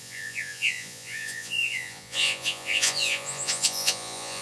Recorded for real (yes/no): no